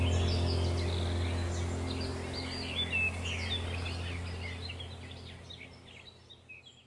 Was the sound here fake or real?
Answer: real